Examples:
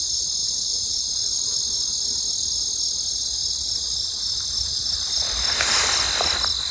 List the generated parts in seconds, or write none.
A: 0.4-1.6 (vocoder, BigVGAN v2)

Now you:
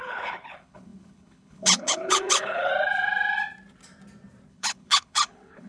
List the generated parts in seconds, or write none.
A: 0.0-2.7 (codec, HILCodec); 4.5-5.7

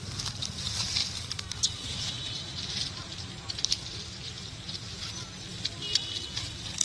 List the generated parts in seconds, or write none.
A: 1.0-5.1 (vocoder, BigVGAN v2)